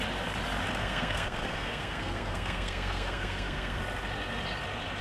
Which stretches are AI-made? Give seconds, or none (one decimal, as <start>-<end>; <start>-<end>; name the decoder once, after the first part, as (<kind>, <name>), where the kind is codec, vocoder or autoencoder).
0.8-3.8 (codec, SNAC)